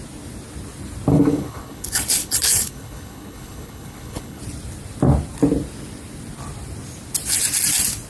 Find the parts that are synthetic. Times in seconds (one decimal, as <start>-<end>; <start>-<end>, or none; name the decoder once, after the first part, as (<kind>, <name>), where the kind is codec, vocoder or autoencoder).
1.1-4.4 (codec, HILCodec)